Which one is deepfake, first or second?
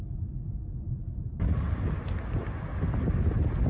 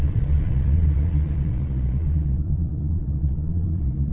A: second